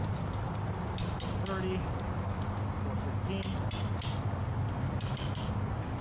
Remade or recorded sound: recorded